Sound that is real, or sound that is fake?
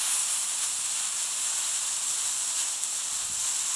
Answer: real